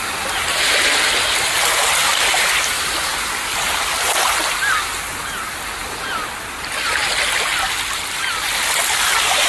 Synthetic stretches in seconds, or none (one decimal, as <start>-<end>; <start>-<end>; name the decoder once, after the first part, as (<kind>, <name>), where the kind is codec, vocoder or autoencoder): none

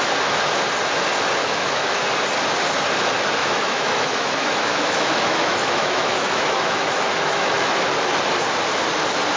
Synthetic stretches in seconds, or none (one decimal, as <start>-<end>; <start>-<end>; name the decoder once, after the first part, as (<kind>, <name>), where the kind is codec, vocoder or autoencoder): 1.4-2.0 (autoencoder, DAC-VAE); 3.4-7.9

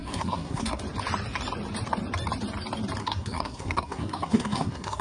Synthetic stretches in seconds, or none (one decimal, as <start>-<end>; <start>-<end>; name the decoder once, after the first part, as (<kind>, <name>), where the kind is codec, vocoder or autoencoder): 0.0-0.8 (codec, SNAC); 3.0-5.0

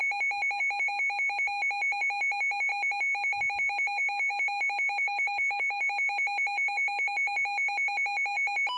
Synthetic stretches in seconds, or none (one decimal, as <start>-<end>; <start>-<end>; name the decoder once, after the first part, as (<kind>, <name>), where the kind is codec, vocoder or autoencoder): 5.0-5.8 (autoencoder, DAC-VAE)

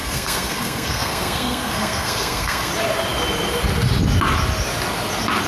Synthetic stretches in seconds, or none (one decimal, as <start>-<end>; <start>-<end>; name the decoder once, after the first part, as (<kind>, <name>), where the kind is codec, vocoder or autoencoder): 0.0-2.7 (codec, SNAC)

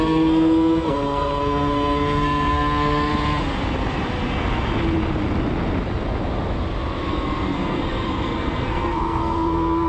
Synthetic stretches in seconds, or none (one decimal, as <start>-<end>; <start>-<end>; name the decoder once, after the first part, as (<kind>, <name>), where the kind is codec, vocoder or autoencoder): 0.0-3.1 (codec, SNAC); 7.1-9.9

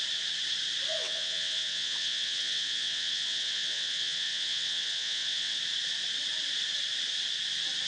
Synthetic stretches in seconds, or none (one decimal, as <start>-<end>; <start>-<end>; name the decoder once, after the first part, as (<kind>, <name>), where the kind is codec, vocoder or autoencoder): 0.9-5.6 (vocoder, WaveNeXt)

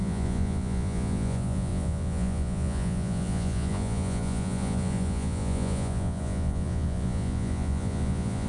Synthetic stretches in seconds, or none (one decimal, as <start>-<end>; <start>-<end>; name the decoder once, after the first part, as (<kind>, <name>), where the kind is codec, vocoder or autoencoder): 0.0-8.5 (vocoder, Vocos)